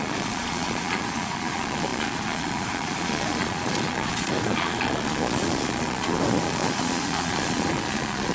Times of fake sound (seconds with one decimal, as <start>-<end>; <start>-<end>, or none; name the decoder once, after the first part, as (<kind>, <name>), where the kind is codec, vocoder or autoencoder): 0.0-8.3 (vocoder, Vocos)